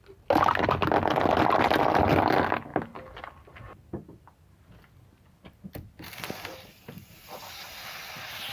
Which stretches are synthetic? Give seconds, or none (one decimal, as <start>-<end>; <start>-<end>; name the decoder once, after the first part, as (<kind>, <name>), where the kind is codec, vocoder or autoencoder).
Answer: none